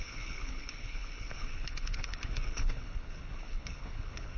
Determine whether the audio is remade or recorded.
remade